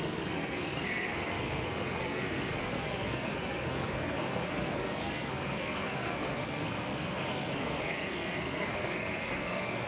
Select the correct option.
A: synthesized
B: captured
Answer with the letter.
A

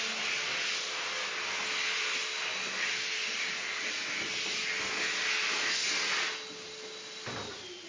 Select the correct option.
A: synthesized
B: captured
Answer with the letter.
B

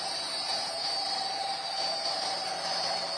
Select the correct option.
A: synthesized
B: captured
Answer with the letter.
A